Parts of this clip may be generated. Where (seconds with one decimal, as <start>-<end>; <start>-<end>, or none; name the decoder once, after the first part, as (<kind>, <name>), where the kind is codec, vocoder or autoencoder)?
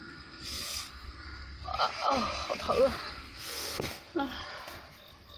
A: 0.0-1.7 (codec, SNAC); 3.1-4.5